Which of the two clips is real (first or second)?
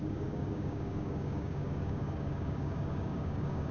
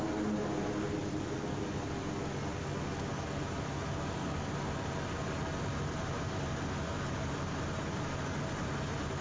second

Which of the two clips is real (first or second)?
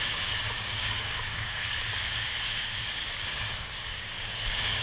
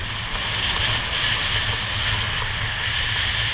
second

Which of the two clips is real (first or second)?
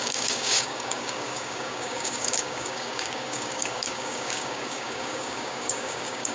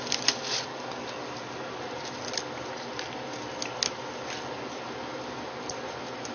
second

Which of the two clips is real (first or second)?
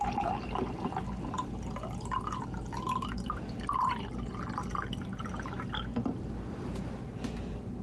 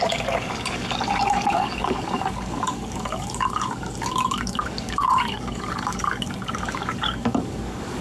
first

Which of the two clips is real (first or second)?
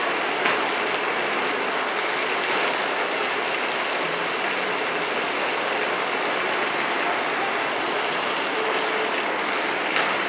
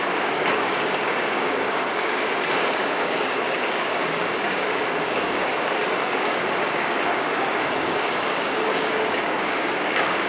first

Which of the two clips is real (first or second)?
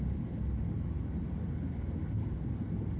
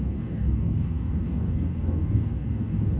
first